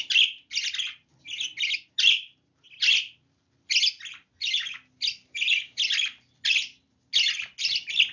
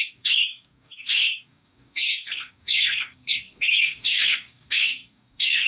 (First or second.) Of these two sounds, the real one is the first